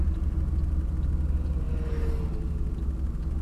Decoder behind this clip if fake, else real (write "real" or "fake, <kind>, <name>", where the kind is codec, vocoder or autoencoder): real